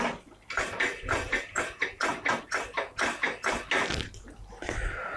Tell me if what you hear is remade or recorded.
recorded